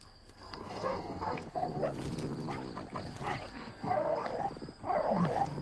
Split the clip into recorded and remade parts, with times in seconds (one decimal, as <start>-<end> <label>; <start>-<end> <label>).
0.0-1.8 remade; 1.8-3.5 recorded; 3.5-4.3 remade; 4.3-5.6 recorded